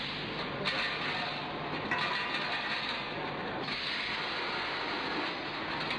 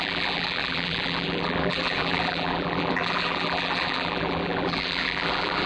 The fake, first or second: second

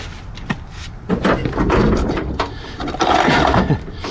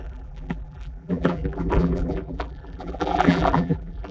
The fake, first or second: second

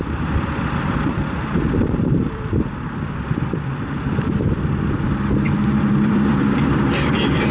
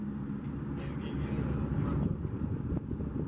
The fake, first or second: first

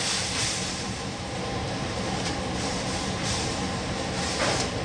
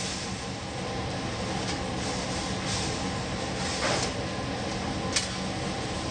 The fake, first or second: first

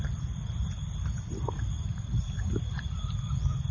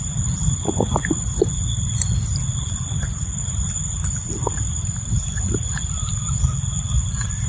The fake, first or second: second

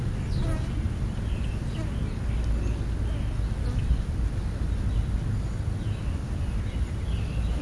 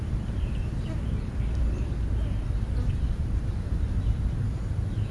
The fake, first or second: second